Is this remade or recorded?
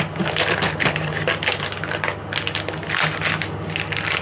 recorded